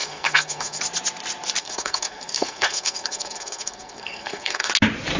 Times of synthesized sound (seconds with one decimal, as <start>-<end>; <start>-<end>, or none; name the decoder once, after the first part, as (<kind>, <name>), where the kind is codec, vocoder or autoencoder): 0.0-0.8 (codec, SNAC); 1.6-4.7